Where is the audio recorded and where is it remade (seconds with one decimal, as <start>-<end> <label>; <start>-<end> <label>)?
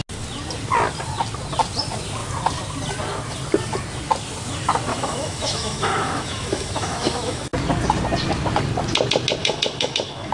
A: 0.0-4.9 recorded; 4.9-7.5 remade; 7.5-9.4 recorded; 9.4-10.3 remade